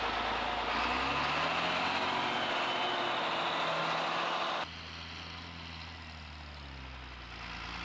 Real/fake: real